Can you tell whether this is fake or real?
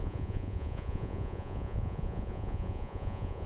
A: fake